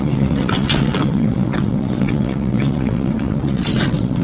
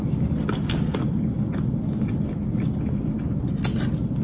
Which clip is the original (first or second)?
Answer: second